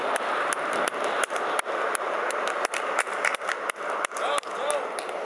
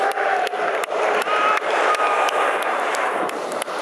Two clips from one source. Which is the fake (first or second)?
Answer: second